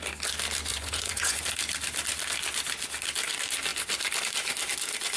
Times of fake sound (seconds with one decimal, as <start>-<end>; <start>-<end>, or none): 0.7-1.4

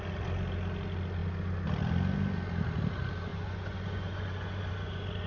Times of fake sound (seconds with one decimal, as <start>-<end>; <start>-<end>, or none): 3.3-5.3

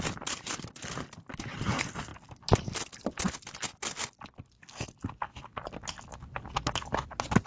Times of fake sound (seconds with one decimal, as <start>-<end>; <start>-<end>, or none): none

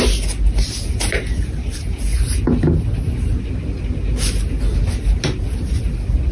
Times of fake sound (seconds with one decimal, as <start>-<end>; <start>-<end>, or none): none

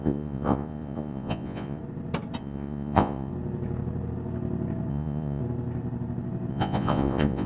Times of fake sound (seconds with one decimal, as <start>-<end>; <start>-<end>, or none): 0.0-1.8; 2.4-3.3; 4.9-5.4; 6.5-7.5

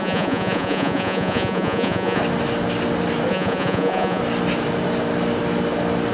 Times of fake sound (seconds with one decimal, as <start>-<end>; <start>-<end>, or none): 0.0-2.2; 3.3-4.2

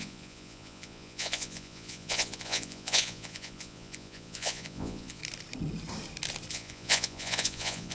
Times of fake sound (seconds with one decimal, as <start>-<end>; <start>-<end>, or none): 0.0-5.2; 6.5-7.9